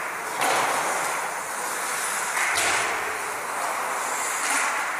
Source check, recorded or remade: recorded